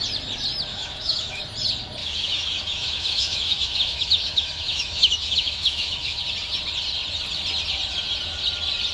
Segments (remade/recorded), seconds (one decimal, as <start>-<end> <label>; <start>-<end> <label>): 0.0-0.7 recorded; 0.7-1.4 remade; 1.4-2.0 recorded; 2.0-6.2 remade; 6.2-8.9 recorded